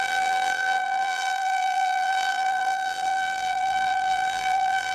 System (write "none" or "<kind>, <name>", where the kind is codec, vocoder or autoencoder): vocoder, BigVGAN v2